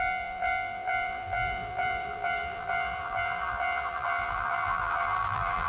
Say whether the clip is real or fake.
fake